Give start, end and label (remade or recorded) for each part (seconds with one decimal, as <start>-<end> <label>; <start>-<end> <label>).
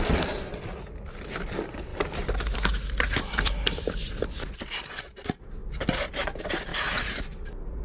0.0-1.9 recorded; 1.9-5.0 remade; 5.0-6.7 recorded; 6.7-7.8 remade